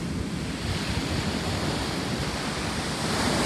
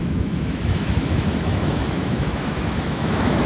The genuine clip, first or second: first